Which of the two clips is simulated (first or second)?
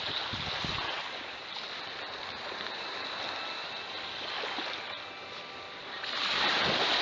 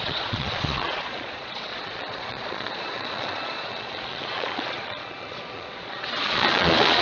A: second